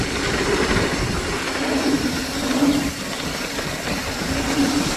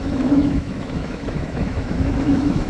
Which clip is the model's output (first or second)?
second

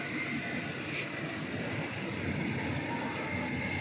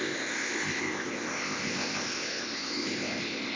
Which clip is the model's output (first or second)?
second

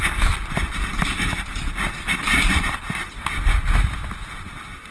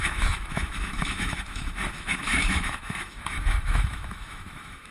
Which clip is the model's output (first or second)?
second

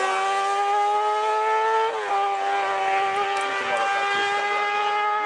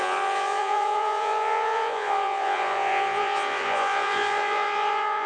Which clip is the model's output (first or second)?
second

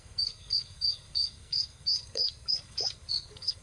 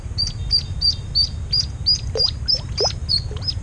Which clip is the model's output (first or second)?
first